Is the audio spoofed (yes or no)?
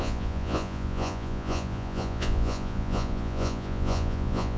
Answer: yes